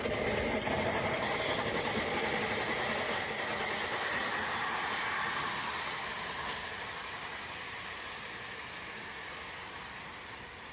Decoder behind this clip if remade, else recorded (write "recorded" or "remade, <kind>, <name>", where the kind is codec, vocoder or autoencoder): recorded